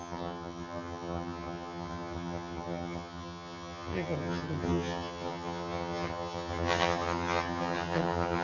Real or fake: fake